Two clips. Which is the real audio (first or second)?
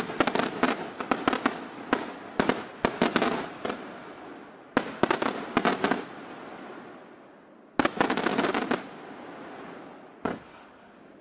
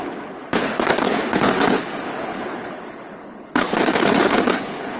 first